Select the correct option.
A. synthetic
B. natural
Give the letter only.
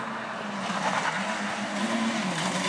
B